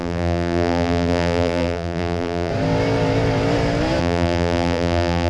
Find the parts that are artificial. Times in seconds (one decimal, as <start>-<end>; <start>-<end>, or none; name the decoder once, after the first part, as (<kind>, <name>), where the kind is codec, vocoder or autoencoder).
0.0-2.5 (vocoder, BigVGAN v2); 4.0-5.3